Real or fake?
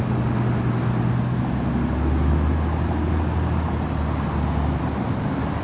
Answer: real